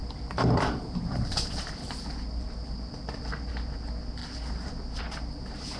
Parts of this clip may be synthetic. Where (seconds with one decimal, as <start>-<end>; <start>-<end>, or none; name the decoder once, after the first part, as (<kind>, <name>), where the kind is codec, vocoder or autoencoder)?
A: 0.0-3.5 (vocoder, BigVGAN v2); 4.2-5.0